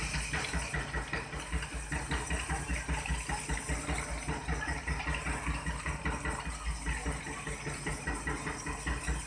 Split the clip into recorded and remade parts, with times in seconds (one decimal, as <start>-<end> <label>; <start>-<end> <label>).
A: 0.0-9.3 recorded